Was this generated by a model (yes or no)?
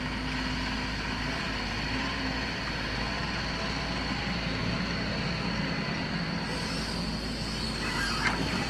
no